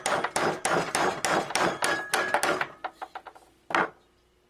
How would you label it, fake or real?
real